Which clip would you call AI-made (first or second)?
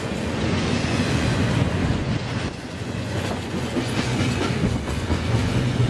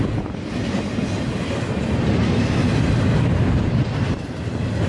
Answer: first